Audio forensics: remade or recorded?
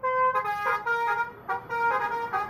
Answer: recorded